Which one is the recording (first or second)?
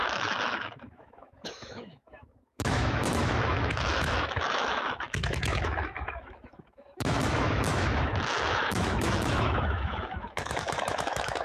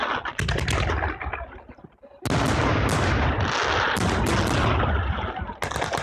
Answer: second